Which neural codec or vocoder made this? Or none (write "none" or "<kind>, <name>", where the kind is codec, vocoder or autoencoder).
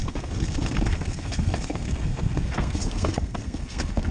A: codec, SNAC